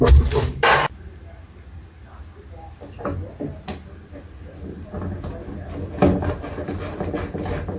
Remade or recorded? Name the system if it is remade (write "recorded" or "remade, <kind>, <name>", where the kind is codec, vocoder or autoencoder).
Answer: recorded